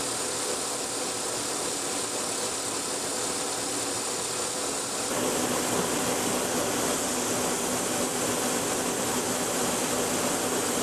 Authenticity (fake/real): real